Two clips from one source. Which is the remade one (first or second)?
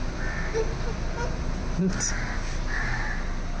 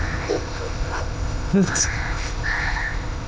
second